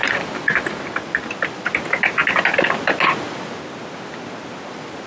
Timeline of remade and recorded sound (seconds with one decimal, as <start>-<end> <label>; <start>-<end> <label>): 0.0-0.8 remade; 0.8-5.1 recorded